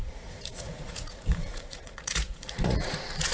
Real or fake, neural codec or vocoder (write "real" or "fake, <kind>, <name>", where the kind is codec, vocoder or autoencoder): fake, vocoder, Vocos